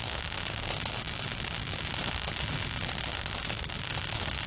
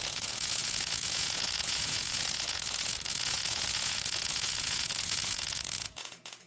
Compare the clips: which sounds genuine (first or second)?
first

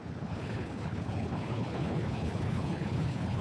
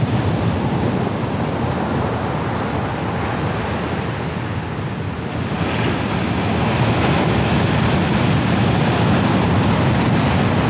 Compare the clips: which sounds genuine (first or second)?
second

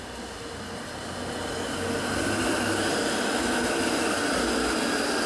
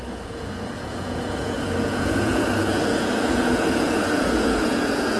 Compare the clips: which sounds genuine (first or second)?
first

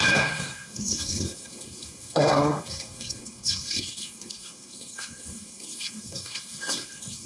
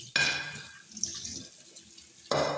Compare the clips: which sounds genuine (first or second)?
second